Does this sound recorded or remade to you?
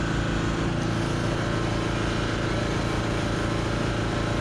recorded